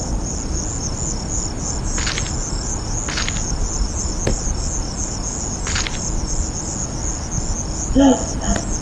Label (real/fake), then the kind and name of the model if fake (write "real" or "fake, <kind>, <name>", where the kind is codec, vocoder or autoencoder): real